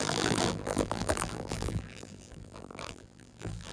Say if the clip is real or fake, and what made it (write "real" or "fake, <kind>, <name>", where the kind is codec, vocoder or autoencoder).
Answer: fake, vocoder, BigVGAN v2